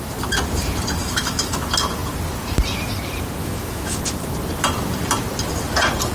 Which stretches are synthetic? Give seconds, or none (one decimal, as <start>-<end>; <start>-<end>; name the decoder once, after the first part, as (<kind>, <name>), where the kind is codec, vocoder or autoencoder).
1.0-1.6 (autoencoder, DAC-VAE); 3.4-4.0